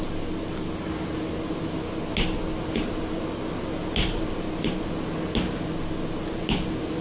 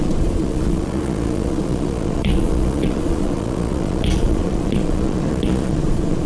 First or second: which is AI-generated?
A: second